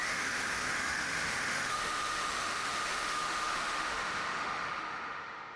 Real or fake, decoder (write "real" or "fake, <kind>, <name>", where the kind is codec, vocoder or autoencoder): fake, autoencoder, DAC-VAE